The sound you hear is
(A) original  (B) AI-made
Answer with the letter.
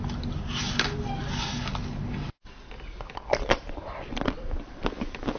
A